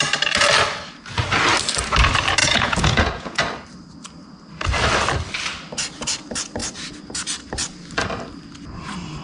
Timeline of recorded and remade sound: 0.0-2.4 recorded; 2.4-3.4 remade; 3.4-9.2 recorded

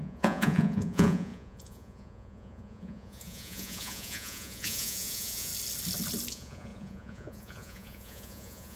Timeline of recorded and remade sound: 0.0-5.5 remade; 5.5-6.3 recorded; 6.3-8.8 remade

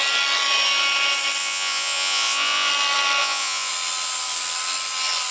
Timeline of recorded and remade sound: 0.0-1.4 recorded; 1.4-2.7 remade; 2.7-3.2 recorded; 3.2-3.7 remade; 3.7-5.3 recorded